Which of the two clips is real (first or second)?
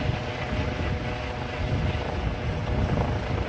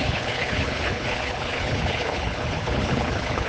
first